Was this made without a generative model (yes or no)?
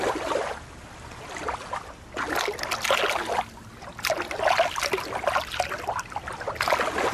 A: yes